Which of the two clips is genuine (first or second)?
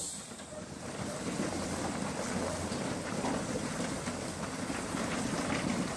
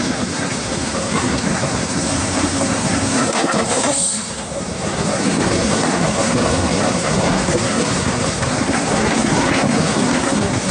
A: first